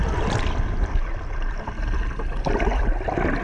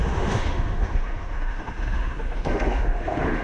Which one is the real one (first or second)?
first